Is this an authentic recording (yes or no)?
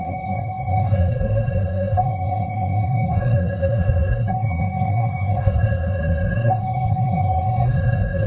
no